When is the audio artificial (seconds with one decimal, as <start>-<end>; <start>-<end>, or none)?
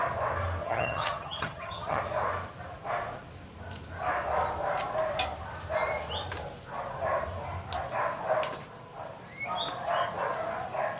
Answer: 0.6-2.0